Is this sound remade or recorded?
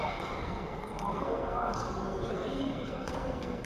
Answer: remade